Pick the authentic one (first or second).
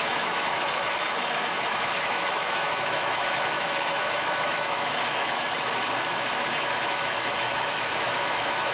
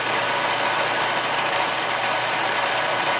second